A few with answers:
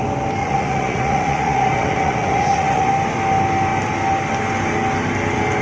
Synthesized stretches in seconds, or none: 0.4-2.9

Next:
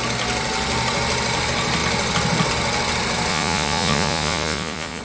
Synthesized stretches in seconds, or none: 3.3-5.0

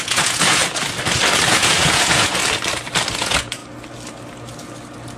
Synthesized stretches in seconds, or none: 0.0-0.6; 1.5-2.4; 3.1-3.6

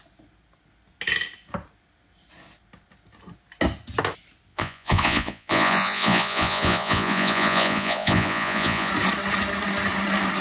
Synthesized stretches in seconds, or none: 4.5-8.9

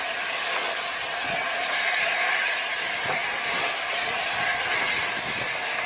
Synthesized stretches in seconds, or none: none

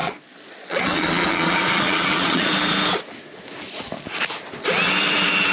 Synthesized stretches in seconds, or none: 0.0-2.5

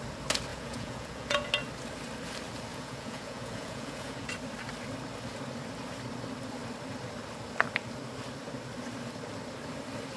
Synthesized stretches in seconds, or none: 0.5-1.5; 2.7-4.3

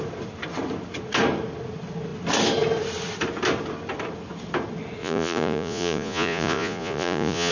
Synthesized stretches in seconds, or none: 5.0-7.5